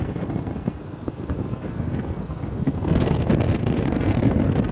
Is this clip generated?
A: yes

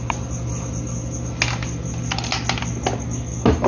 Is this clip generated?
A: no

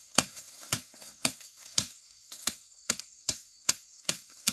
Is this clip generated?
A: yes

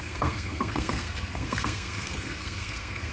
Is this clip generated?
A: yes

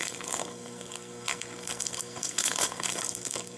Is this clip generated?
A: yes